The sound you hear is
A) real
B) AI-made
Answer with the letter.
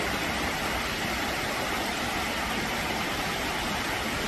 B